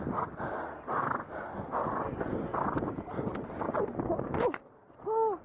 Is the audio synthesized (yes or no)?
no